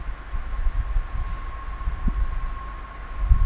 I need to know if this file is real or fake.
real